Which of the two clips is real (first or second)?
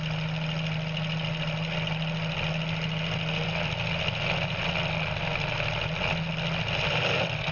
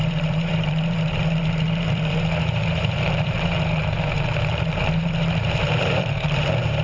first